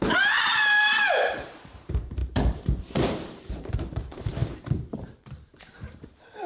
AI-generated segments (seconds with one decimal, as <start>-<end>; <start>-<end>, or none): 0.0-0.5; 1.3-6.5